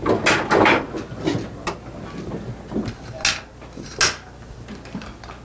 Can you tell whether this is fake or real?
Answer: real